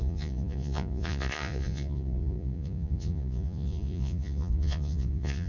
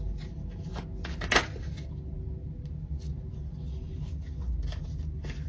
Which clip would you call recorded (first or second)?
second